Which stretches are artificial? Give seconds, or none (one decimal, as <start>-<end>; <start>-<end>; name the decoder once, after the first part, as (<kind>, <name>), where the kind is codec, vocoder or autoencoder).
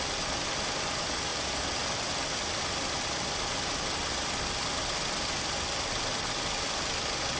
none